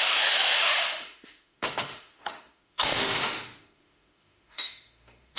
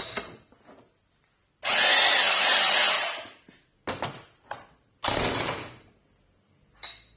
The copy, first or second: first